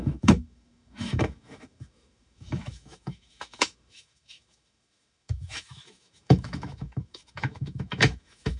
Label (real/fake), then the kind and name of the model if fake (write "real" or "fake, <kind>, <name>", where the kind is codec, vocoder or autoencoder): fake, autoencoder, DAC-VAE